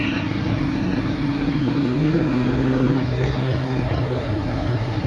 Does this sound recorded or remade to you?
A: remade